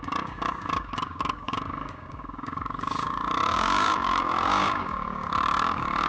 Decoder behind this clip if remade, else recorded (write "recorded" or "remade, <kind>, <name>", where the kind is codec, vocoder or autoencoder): remade, codec, DAC